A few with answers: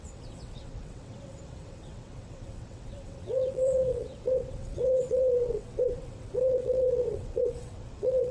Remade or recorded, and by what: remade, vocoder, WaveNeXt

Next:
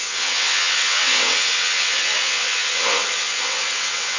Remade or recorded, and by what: remade, vocoder, WaveNeXt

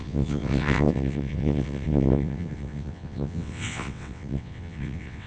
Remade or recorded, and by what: remade, vocoder, WaveNeXt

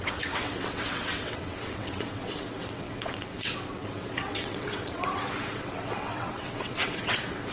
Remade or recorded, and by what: remade, vocoder, WaveNeXt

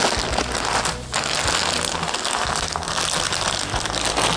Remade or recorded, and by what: recorded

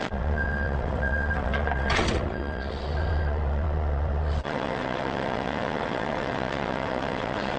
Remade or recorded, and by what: remade, vocoder, WaveNeXt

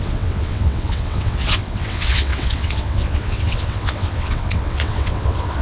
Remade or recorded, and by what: remade, vocoder, WaveNeXt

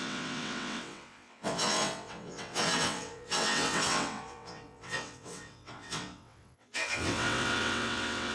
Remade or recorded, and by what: remade, vocoder, WaveNeXt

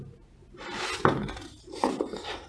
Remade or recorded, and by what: recorded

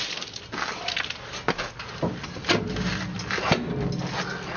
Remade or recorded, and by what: recorded